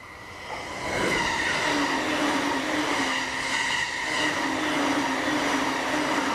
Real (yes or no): yes